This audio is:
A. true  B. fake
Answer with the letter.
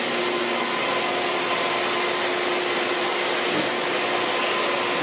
A